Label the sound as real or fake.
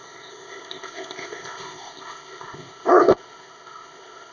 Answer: fake